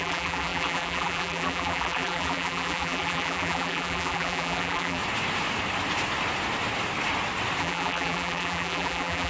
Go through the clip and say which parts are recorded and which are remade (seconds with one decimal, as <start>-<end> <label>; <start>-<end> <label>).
0.0-5.0 remade; 5.0-7.6 recorded; 7.6-9.3 remade